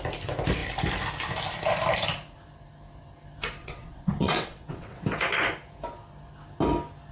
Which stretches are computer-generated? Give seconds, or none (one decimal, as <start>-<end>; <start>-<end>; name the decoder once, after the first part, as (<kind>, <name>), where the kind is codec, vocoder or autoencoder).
3.6-5.0 (vocoder, WaveNeXt)